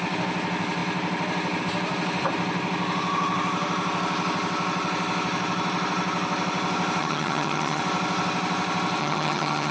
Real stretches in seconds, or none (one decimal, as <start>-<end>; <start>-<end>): 0.0-7.0; 7.8-9.0